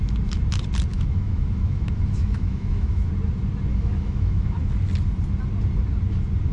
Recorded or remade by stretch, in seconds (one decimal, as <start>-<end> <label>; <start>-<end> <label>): 0.0-0.9 recorded; 0.9-3.1 remade; 3.1-3.7 recorded; 3.7-4.6 remade; 4.6-6.5 recorded